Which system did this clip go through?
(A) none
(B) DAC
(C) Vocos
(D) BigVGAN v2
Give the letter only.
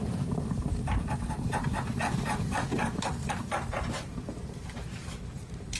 D